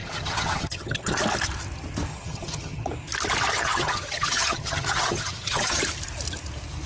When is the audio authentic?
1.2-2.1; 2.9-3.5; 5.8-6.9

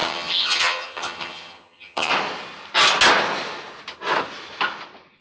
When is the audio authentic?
2.1-5.2

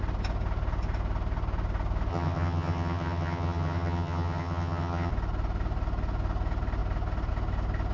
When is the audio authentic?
0.0-2.1; 5.1-7.9

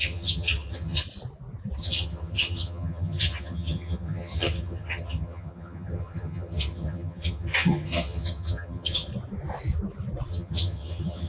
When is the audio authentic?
1.0-1.8; 9.1-10.3

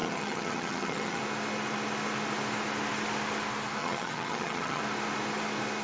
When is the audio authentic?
1.2-3.8; 4.8-5.8

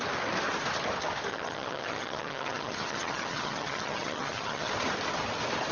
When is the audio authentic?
0.0-1.3; 4.7-5.7

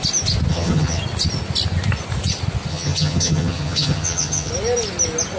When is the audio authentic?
0.0-0.5; 1.0-2.7; 4.5-5.4